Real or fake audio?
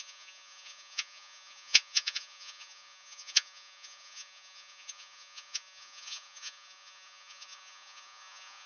fake